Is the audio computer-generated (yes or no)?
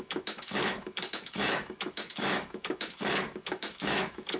yes